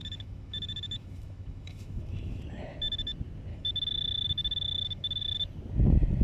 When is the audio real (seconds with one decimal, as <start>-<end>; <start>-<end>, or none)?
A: 2.4-3.5; 5.2-6.2